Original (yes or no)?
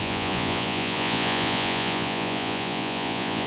no